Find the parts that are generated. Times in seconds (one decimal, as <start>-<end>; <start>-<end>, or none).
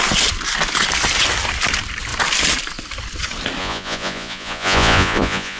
3.6-5.6